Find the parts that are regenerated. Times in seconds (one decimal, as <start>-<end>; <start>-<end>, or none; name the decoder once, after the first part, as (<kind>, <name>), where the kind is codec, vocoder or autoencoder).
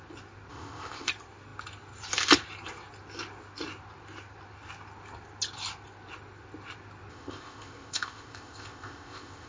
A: 0.5-1.1 (codec, ZipCodec); 7.1-9.5